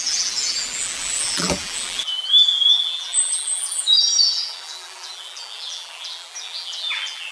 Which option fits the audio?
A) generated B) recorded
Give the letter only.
A